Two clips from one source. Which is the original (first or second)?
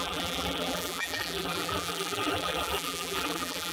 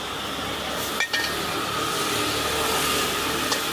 second